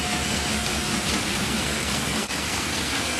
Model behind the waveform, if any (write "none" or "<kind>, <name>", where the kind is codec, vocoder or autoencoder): codec, SNAC